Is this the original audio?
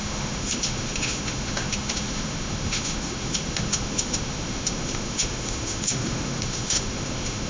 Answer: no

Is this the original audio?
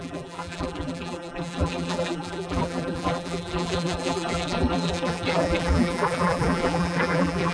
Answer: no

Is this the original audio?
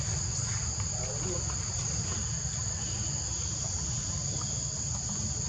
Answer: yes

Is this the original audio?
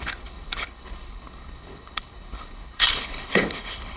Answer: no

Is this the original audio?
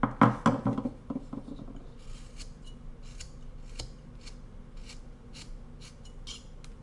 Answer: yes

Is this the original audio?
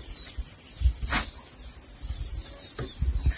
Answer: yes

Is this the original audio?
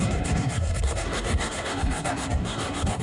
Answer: no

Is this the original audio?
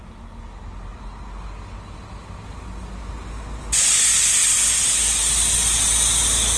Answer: yes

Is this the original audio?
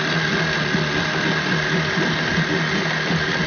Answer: yes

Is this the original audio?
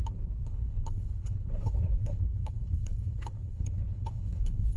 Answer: no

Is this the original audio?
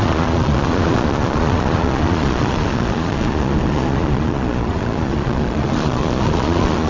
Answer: no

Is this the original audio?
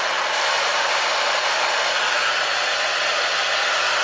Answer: yes